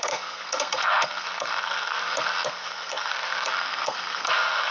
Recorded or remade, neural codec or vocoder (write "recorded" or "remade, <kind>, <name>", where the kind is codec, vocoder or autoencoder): remade, codec, SNAC